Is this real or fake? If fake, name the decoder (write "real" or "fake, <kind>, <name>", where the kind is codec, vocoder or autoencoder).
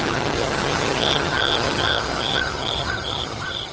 fake, vocoder, HiFi-GAN